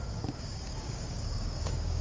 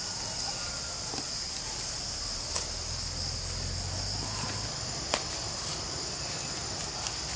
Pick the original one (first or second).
second